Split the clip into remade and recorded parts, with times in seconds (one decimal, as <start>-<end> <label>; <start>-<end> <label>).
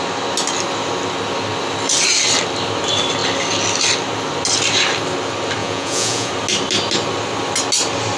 0.0-5.6 recorded; 5.6-6.3 remade; 6.3-8.2 recorded